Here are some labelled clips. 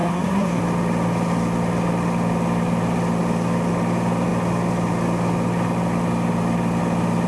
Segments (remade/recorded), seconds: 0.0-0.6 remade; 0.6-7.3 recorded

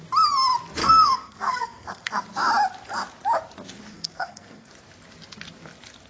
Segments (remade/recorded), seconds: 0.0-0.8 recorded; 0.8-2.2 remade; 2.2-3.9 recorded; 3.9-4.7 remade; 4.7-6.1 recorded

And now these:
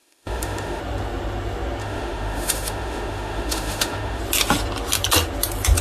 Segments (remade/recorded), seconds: 0.0-0.8 remade; 0.8-1.8 recorded; 1.8-4.2 remade; 4.2-5.8 recorded

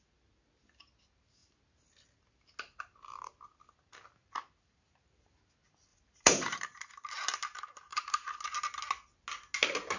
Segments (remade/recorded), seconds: 0.0-5.9 recorded; 5.9-6.9 remade; 6.9-7.9 recorded; 7.9-8.4 remade; 8.4-10.0 recorded